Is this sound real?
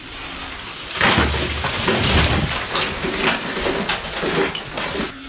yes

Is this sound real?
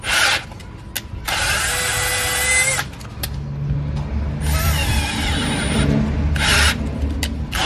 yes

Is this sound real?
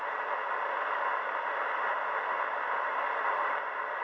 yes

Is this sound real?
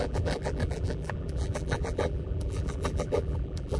no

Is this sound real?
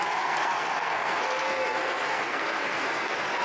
no